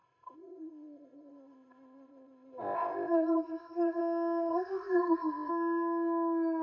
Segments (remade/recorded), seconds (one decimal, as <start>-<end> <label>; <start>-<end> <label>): 0.0-4.0 remade; 4.0-4.5 recorded; 4.5-5.5 remade; 5.5-6.6 recorded